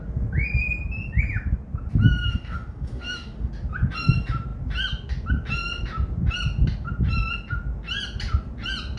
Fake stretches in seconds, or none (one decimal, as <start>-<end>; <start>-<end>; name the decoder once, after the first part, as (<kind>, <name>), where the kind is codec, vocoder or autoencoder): 2.2-3.5 (autoencoder, DAC-VAE)

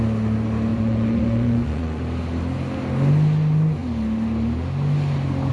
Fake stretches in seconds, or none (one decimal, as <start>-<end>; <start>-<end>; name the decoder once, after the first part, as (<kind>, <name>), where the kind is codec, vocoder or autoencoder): 0.7-2.0 (vocoder, Vocos)